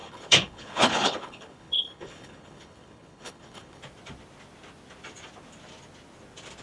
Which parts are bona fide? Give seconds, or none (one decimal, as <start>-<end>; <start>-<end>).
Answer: 3.8-6.6